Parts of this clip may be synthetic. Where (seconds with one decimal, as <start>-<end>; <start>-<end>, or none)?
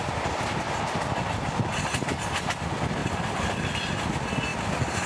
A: none